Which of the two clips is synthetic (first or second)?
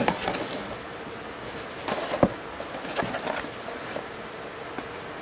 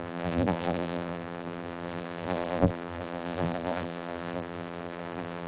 second